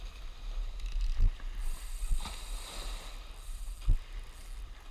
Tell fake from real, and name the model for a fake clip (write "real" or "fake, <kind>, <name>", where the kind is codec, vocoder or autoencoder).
real